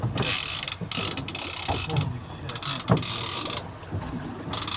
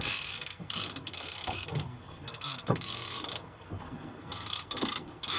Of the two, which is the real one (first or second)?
first